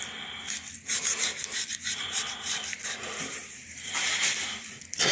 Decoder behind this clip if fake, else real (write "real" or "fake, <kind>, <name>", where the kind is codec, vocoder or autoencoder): fake, vocoder, BigVGAN v2